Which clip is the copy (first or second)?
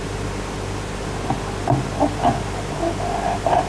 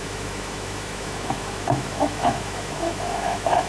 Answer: second